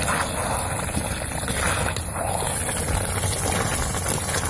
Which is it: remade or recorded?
recorded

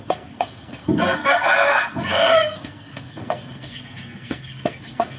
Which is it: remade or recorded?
remade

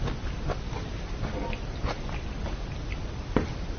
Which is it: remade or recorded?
recorded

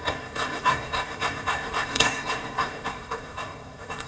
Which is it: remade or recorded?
remade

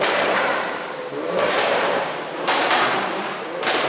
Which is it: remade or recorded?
remade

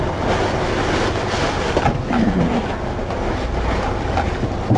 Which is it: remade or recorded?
recorded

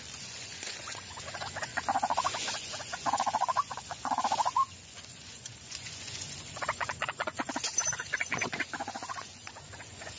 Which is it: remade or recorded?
remade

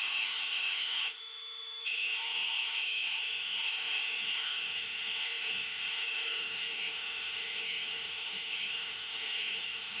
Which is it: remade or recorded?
remade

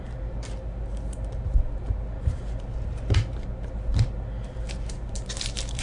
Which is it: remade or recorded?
remade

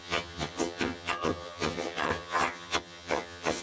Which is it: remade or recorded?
remade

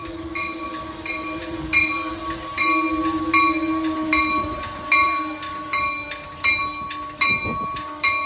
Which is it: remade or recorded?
recorded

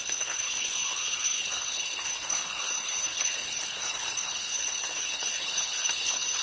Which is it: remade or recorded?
remade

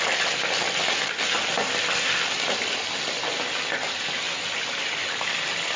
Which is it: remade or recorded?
recorded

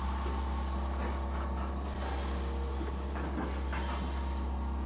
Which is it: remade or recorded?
recorded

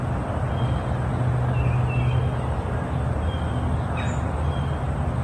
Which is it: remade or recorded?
recorded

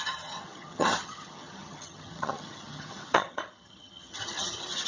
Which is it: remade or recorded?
remade